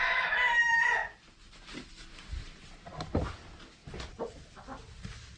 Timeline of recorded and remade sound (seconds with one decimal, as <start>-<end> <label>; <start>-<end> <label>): 0.0-1.0 remade; 1.0-2.1 recorded; 2.1-2.9 remade; 2.9-4.8 recorded; 4.8-5.4 remade

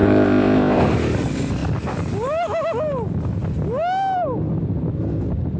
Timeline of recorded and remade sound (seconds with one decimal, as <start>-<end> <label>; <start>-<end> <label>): 0.0-0.8 remade; 0.8-5.6 recorded

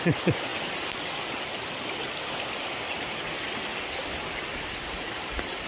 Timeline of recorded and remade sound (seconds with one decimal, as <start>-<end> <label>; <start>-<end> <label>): 0.0-5.7 recorded

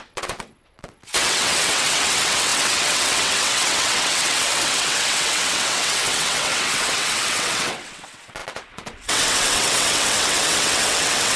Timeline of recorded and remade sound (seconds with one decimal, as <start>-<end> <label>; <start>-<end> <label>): 0.0-11.4 remade

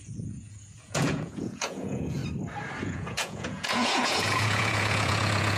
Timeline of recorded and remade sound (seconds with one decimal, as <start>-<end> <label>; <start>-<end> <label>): 0.0-2.2 remade; 2.2-2.8 recorded; 2.8-5.6 remade

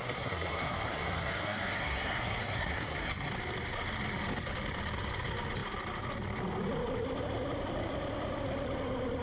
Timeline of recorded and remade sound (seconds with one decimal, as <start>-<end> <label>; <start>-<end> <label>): 0.0-3.3 remade; 3.3-9.2 recorded

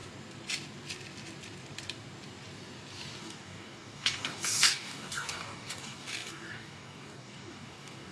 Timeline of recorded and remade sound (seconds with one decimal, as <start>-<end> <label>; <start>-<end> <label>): 0.0-3.2 recorded; 3.2-8.1 remade